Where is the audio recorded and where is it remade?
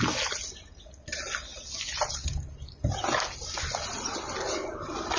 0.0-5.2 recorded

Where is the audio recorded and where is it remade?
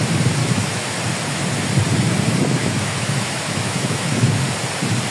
0.0-0.4 recorded; 0.4-0.9 remade; 0.9-2.6 recorded; 2.6-4.4 remade; 4.4-5.1 recorded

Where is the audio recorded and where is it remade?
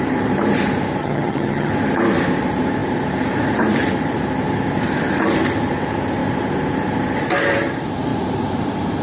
0.0-1.0 recorded; 1.0-1.7 remade; 1.7-9.0 recorded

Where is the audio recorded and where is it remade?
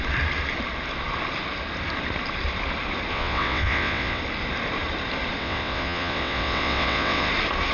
0.0-3.1 recorded; 3.1-4.2 remade; 4.2-5.4 recorded; 5.4-7.3 remade; 7.3-7.7 recorded